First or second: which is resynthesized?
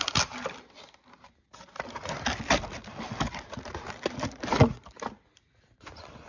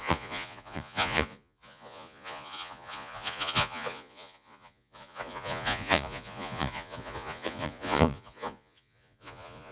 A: second